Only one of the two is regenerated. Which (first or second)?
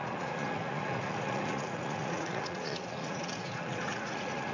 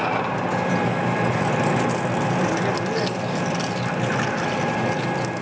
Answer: first